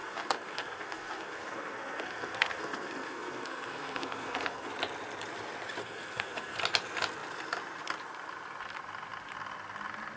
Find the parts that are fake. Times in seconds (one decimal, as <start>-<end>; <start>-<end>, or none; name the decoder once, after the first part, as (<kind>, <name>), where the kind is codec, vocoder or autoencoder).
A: 0.0-4.7 (codec, SNAC); 5.8-6.6